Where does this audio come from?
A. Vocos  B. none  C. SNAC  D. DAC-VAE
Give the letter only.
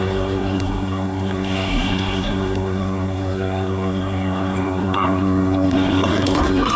C